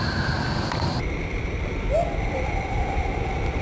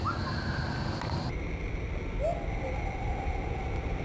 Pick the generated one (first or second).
first